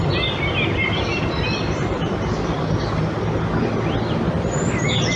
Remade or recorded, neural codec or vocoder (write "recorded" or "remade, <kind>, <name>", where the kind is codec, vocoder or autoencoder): recorded